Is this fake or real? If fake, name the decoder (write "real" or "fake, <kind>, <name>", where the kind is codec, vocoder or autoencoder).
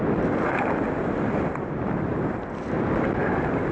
fake, vocoder, BigVGAN v2